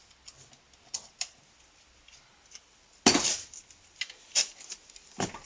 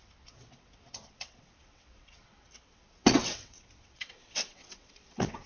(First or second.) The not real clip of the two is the second